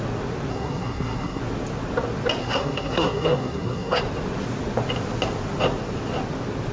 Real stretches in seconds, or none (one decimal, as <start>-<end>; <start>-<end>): 0.0-0.5; 1.4-2.4; 4.0-6.7